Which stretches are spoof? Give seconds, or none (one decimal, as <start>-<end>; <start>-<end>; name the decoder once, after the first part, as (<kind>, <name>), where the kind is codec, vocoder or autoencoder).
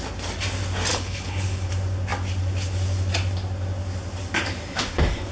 0.9-1.7 (codec, HILCodec)